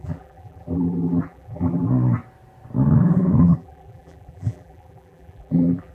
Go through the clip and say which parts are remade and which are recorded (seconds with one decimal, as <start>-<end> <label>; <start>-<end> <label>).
0.0-1.9 remade; 1.9-3.4 recorded; 3.4-5.9 remade